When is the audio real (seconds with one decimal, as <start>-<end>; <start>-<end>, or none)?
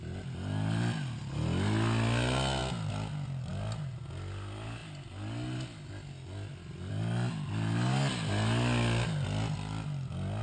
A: 0.0-10.4